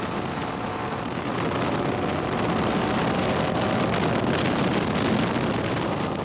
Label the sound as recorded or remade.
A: recorded